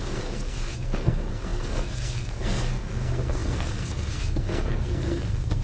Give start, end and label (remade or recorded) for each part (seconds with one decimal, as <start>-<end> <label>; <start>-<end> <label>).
0.0-5.6 remade